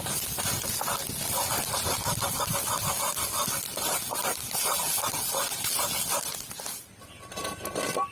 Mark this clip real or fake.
real